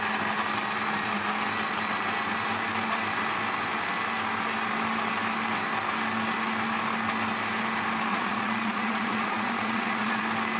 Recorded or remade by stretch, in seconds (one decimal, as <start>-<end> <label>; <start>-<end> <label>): 0.0-8.1 recorded; 8.1-10.2 remade; 10.2-10.6 recorded